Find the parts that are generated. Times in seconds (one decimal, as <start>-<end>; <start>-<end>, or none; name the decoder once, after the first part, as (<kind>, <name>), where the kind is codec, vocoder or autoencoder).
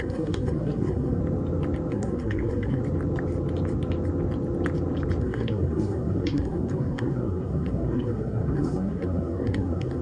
0.0-1.2 (codec, SNAC); 1.9-2.8; 5.2-10.0